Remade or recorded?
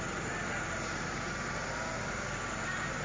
recorded